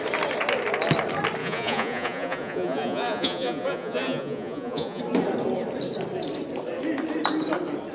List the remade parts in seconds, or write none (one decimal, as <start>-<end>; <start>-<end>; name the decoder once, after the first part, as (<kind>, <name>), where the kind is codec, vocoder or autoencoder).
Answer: 1.4-5.0 (vocoder, Vocos)